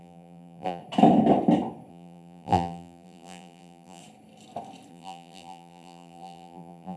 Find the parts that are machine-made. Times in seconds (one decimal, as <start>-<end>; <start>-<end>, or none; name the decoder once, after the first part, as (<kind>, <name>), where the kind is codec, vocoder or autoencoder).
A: 0.0-0.8 (vocoder, BigVGAN v2); 1.9-4.0; 4.9-7.0